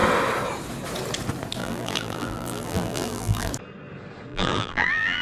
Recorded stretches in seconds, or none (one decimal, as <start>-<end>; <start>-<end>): 0.0-1.6; 3.5-4.3